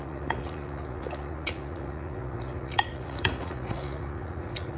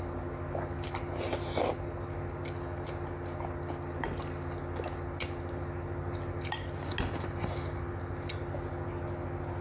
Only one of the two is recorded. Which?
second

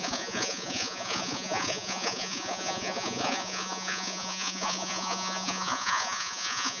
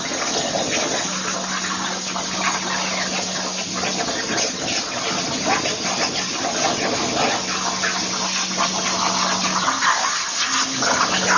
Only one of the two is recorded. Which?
second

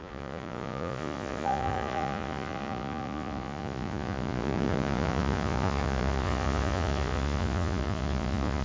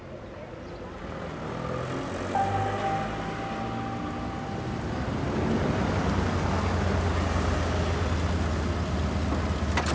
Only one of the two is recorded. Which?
second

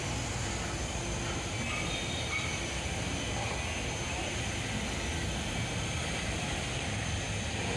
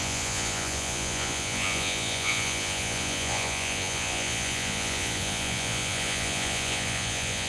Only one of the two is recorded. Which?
first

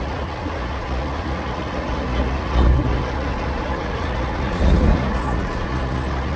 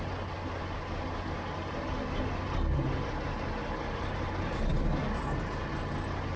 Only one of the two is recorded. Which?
second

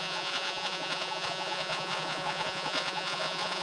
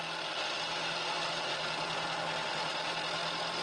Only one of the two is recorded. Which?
second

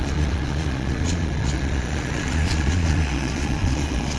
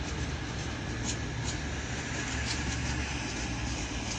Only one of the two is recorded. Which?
second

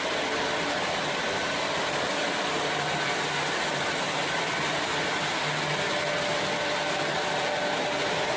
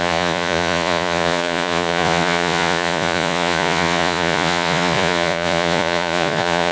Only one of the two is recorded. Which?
first